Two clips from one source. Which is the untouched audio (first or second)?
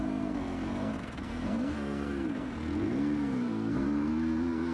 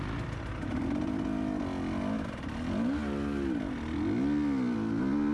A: second